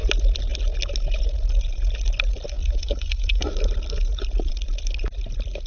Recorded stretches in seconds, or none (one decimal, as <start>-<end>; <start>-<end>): 0.0-2.6; 3.5-5.7